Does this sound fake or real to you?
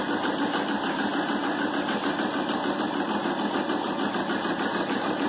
real